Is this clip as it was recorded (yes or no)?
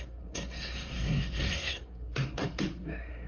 no